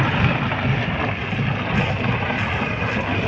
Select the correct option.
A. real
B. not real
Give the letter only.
A